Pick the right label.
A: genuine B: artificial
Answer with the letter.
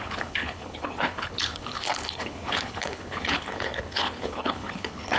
B